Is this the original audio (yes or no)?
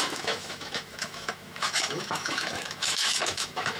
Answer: no